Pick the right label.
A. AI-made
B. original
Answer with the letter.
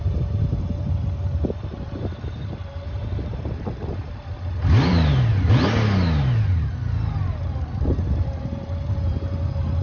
B